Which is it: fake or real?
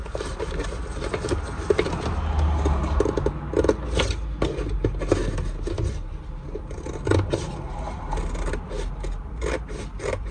real